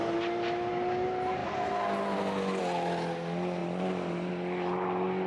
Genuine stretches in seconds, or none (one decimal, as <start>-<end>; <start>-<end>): 0.0-3.6; 4.3-5.3